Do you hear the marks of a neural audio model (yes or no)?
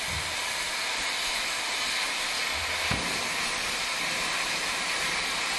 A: no